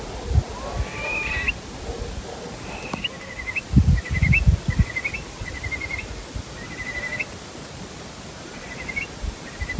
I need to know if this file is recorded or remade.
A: recorded